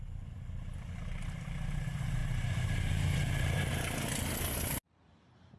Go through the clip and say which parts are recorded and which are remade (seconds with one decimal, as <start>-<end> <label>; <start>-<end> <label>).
0.0-5.6 recorded